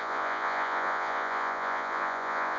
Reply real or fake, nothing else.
fake